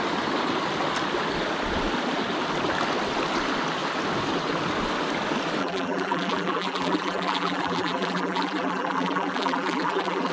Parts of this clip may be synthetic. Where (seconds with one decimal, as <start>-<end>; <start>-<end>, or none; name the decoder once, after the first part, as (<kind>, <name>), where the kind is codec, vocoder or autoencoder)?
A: 5.6-10.3 (vocoder, BigVGAN v2)